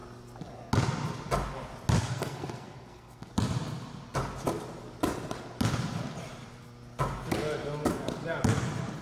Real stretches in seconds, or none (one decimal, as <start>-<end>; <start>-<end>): 0.0-2.0; 3.3-9.0